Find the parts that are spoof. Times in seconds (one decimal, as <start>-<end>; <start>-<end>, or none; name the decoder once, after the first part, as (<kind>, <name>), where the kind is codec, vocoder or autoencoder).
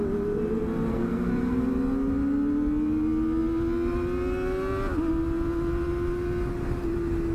0.9-1.6 (codec, SNAC)